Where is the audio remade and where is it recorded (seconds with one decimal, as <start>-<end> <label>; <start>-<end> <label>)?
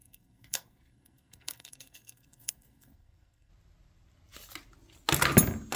0.0-3.5 remade; 3.5-5.8 recorded